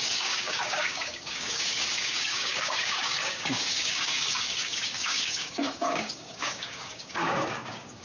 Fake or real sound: fake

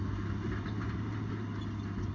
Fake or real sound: real